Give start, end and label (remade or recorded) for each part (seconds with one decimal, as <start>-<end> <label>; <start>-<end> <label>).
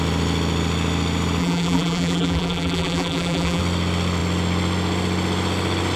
0.0-1.4 recorded; 1.4-3.6 remade; 3.6-6.0 recorded